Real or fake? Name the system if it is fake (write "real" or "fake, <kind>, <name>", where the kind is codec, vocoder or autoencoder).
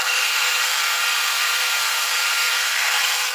fake, codec, SNAC